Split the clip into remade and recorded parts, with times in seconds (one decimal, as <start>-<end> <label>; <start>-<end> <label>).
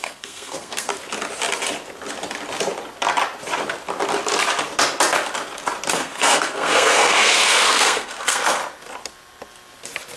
0.0-0.9 remade; 0.9-5.9 recorded; 5.9-8.6 remade; 8.6-10.2 recorded